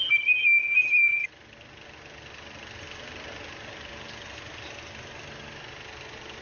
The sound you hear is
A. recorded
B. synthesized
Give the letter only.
A